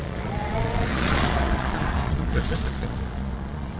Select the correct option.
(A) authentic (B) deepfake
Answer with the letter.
B